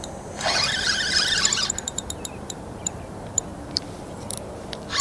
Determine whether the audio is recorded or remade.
remade